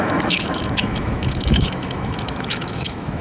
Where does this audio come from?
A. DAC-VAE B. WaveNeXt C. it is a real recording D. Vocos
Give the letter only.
A